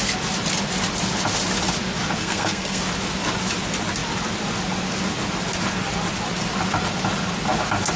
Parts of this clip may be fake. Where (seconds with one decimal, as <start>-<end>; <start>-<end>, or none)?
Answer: 2.2-2.8